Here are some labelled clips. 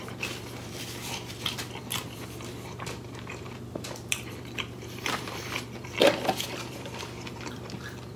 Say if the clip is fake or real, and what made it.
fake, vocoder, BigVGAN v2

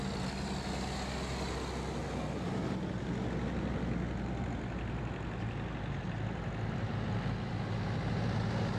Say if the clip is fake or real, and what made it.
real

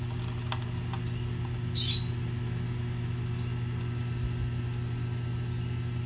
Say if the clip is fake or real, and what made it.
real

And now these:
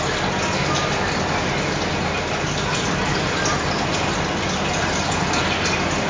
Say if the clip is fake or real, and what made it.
real